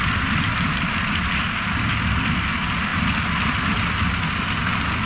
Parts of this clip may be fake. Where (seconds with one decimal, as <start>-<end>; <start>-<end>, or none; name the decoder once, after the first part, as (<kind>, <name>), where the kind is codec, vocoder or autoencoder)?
none

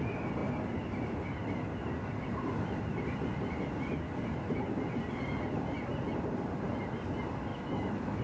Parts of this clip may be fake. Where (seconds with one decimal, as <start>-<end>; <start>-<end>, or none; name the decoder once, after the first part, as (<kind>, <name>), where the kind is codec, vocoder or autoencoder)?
7.5-8.2 (autoencoder, DAC-VAE)